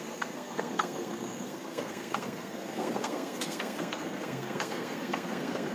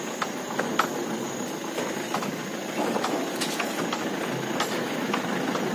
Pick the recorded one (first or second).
second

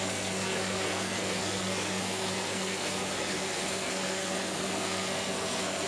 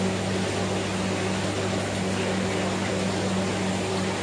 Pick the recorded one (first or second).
second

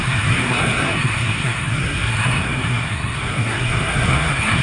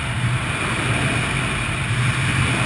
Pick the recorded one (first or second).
second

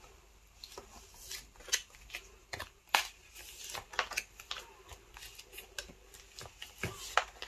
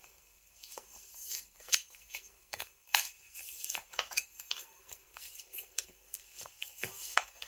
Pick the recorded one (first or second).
first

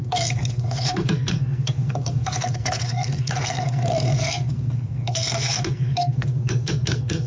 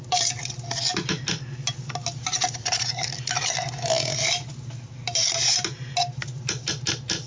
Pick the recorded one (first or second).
second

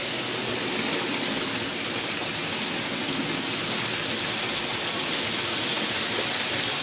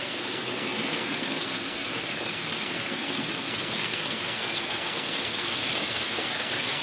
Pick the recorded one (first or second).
first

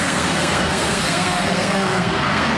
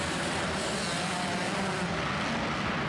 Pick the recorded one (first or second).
second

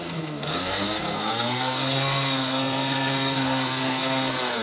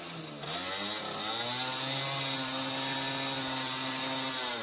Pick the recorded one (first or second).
second